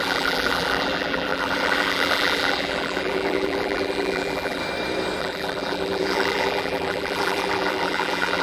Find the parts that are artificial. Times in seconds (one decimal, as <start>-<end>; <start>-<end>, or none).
0.0-4.6; 5.2-8.4